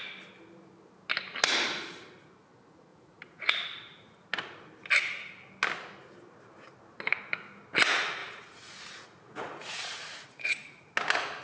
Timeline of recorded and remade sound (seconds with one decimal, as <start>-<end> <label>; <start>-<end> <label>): 0.0-2.9 recorded; 2.9-3.5 remade; 3.5-8.2 recorded; 8.2-10.8 remade; 10.8-11.4 recorded